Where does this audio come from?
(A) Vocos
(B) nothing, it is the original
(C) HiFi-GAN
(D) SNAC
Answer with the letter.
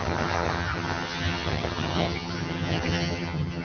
C